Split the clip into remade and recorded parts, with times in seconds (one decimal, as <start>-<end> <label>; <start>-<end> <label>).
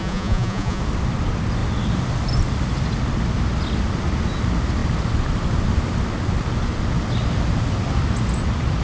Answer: 0.0-0.8 remade; 0.8-8.8 recorded